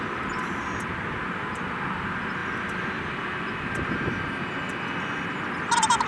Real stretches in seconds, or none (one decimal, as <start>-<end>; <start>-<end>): 0.0-6.1